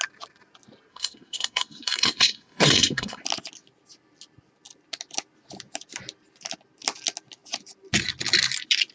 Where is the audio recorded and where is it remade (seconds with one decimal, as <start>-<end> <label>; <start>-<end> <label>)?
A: 0.0-0.9 recorded; 0.9-3.2 remade; 3.2-8.9 recorded